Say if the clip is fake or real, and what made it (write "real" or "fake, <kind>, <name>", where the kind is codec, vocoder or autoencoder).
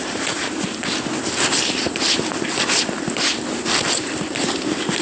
fake, vocoder, BigVGAN v2